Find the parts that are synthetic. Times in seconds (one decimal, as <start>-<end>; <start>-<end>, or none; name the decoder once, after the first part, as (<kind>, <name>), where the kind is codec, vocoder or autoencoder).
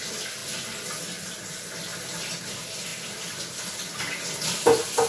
none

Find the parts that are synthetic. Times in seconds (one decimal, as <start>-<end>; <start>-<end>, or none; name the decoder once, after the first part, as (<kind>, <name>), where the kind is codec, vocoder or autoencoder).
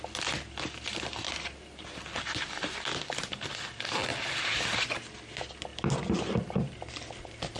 0.0-7.6 (vocoder, BigVGAN v2)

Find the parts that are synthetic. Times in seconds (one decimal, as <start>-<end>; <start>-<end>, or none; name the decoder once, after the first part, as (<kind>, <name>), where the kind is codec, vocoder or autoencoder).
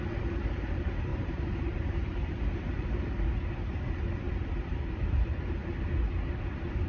0.0-5.6 (vocoder, BigVGAN v2); 6.3-6.9